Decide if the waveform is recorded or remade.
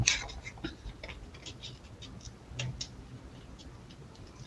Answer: recorded